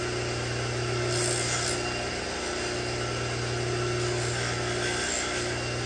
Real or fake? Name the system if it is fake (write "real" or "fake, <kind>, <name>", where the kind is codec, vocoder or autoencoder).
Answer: real